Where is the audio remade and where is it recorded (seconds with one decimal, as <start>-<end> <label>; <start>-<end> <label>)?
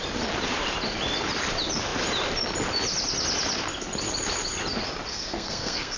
0.0-5.1 recorded; 5.1-6.0 remade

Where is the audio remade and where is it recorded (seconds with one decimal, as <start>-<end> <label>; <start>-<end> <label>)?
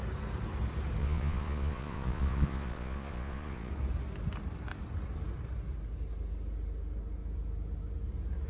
0.0-1.0 recorded; 1.0-3.7 remade; 3.7-8.5 recorded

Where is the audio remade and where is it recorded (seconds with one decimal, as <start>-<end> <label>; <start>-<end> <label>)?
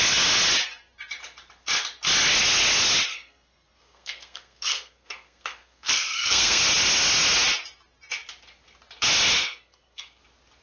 0.0-3.1 recorded; 3.1-6.6 remade; 6.6-9.4 recorded; 9.4-10.2 remade; 10.2-10.6 recorded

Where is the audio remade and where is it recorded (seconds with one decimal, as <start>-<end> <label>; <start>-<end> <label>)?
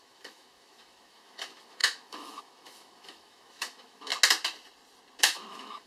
0.0-4.1 remade; 4.1-5.2 recorded; 5.2-5.9 remade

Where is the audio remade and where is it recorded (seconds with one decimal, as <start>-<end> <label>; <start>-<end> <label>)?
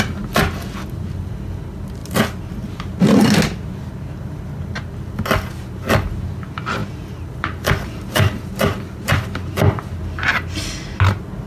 0.0-6.8 recorded; 6.8-10.0 remade; 10.0-11.5 recorded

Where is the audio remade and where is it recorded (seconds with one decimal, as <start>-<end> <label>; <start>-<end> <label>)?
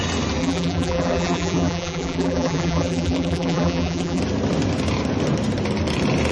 0.0-0.4 recorded; 0.4-4.2 remade; 4.2-6.3 recorded